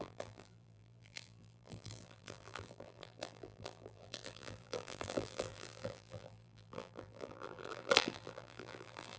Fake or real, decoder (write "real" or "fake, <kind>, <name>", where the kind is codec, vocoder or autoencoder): fake, vocoder, BigVGAN v2